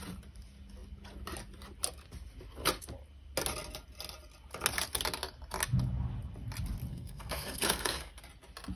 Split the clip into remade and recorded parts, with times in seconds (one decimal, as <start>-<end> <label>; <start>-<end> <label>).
0.0-6.9 recorded; 6.9-8.2 remade; 8.2-8.8 recorded